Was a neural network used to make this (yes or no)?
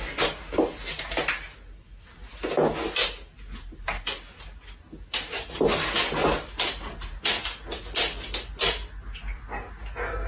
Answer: no